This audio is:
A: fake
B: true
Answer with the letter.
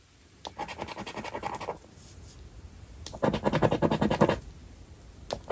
B